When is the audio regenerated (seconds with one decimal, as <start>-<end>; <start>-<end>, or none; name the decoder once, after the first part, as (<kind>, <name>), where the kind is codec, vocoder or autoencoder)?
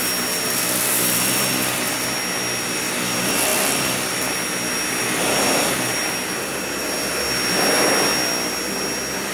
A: none